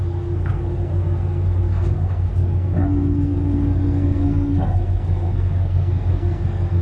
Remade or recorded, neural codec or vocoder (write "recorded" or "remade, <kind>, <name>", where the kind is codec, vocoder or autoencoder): remade, codec, SNAC